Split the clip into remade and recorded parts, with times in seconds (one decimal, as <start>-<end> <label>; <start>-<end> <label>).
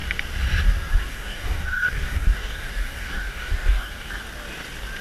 0.0-1.1 recorded; 1.1-4.1 remade; 4.1-5.0 recorded